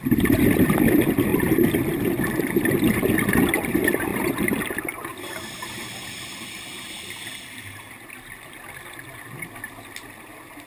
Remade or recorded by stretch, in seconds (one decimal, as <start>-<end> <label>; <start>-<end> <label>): 0.0-1.3 recorded; 1.3-1.9 remade; 1.9-4.1 recorded; 4.1-4.6 remade; 4.6-5.1 recorded; 5.1-5.7 remade; 5.7-10.7 recorded